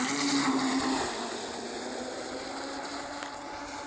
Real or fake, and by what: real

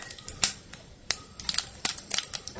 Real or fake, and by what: fake, vocoder, BigVGAN v2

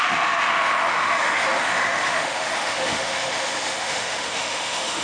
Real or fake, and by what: fake, autoencoder, DAC-VAE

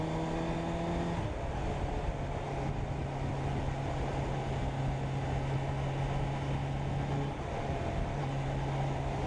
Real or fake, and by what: real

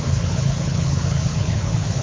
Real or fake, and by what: fake, codec, HILCodec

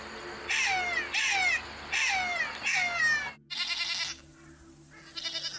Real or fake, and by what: real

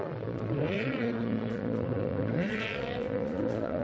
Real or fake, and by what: fake, vocoder, Vocos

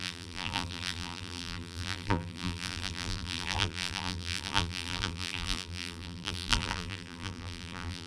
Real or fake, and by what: fake, vocoder, BigVGAN v2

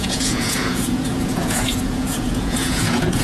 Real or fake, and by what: fake, vocoder, Vocos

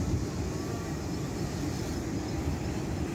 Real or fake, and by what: real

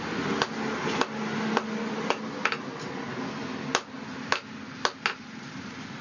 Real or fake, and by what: real